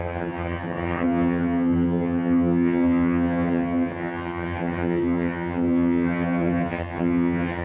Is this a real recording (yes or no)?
no